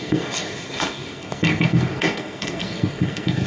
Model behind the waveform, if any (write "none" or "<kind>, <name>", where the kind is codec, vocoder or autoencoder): codec, SNAC